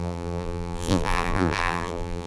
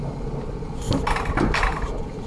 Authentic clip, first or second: second